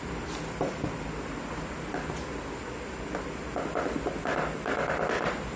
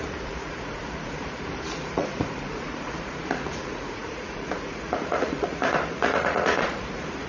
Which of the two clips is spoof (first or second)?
second